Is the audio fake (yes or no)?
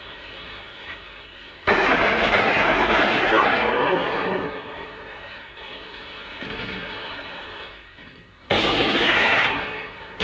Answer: yes